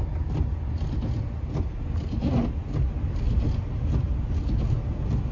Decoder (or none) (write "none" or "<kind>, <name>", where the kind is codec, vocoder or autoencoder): none